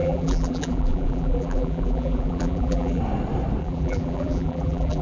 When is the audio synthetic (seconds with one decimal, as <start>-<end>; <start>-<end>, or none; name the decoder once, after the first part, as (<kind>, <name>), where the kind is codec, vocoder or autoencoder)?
0.0-3.0 (vocoder, BigVGAN v2); 3.6-5.0